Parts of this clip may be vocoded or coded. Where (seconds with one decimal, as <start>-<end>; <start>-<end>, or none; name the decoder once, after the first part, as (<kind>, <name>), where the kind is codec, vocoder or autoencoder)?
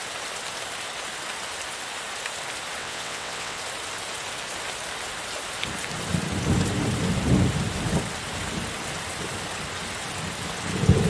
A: 2.8-3.6 (vocoder, WaveNeXt)